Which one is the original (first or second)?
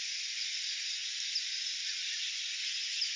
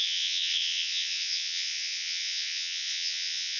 first